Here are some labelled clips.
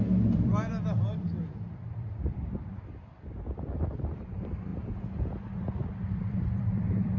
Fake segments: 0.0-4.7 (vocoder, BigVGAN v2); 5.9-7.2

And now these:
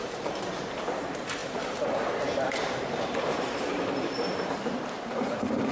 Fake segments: 0.0-5.7 (vocoder, BigVGAN v2)

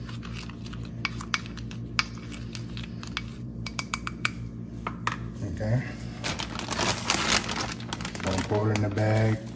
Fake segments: 3.3-4.3 (vocoder, BigVGAN v2)

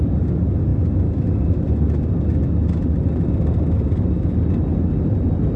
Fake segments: none

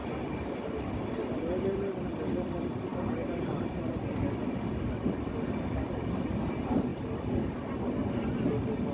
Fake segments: 0.0-0.6 (vocoder, BigVGAN v2); 2.9-4.2

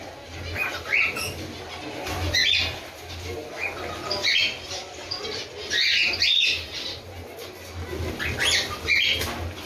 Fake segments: none

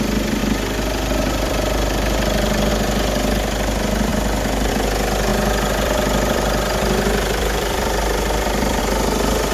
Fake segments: 0.4-2.7 (vocoder, BigVGAN v2); 4.1-4.7; 5.3-8.8

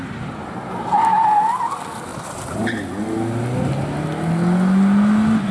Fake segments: 2.1-2.7 (vocoder, BigVGAN v2)